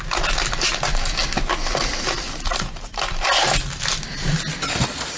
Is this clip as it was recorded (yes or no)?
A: yes